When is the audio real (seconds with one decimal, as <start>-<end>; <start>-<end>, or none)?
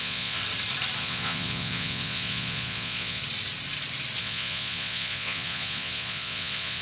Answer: 0.4-1.0; 3.2-4.2